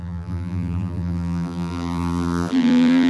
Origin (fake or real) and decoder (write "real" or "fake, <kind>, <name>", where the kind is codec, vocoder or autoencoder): fake, vocoder, BigVGAN v2